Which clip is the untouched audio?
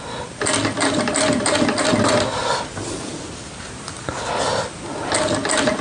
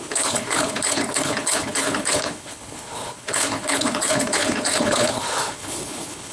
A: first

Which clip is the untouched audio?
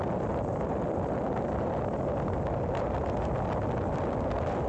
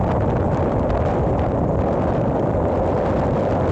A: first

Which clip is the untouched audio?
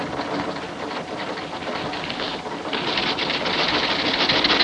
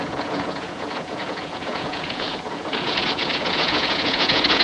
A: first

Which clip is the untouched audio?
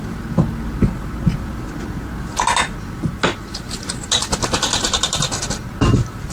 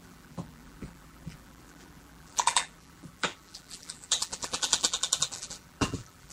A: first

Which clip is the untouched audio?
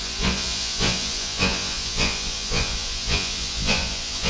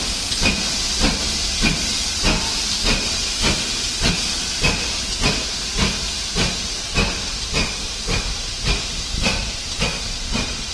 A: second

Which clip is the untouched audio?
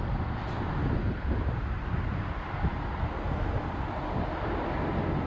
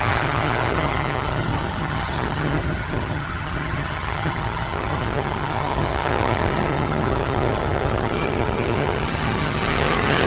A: first